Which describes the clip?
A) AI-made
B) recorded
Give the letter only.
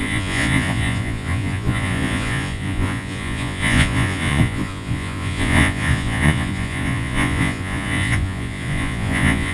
A